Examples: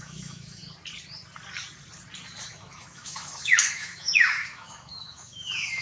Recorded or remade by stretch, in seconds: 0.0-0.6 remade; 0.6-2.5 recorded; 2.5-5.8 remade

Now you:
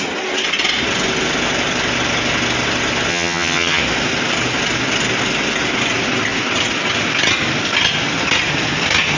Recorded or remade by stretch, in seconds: 0.0-3.1 recorded; 3.1-3.8 remade; 3.8-9.2 recorded

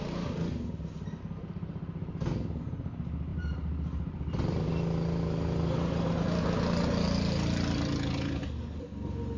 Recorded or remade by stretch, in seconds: 0.0-3.3 recorded; 3.3-4.7 remade; 4.7-9.4 recorded

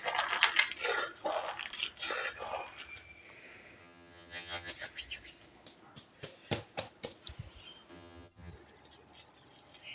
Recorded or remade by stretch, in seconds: 0.0-3.8 recorded; 3.8-4.7 remade; 4.7-7.9 recorded; 7.9-8.5 remade; 8.5-9.9 recorded

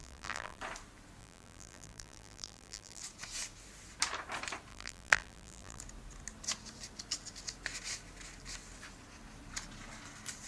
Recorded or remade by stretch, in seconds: 0.0-0.6 remade; 0.6-1.2 recorded; 1.2-3.0 remade; 3.0-4.7 recorded; 4.7-5.8 remade; 5.8-10.5 recorded